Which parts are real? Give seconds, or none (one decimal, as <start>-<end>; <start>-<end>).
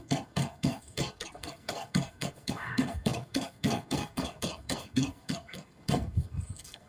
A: none